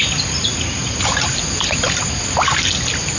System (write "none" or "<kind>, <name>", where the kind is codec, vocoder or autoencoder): none